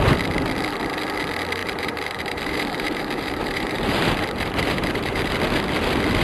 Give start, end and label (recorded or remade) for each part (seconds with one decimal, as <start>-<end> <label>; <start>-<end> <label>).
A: 0.0-1.6 recorded; 1.6-5.3 remade; 5.3-6.2 recorded